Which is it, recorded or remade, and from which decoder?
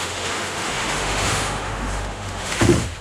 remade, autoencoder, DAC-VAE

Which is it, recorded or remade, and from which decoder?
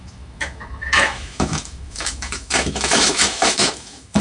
remade, autoencoder, DAC-VAE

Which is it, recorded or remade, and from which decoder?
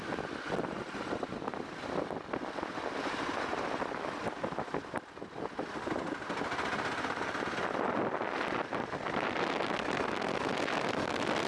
recorded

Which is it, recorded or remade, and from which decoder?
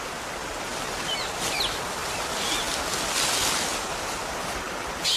recorded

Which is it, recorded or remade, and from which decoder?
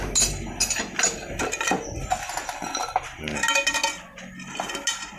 recorded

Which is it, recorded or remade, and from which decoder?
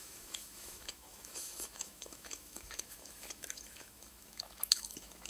remade, autoencoder, DAC-VAE